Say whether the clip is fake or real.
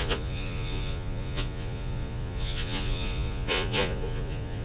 fake